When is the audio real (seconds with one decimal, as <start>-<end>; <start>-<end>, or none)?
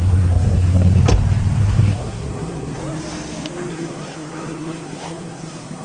1.0-1.6; 2.8-3.7